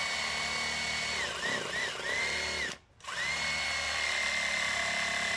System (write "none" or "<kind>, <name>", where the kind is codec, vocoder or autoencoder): none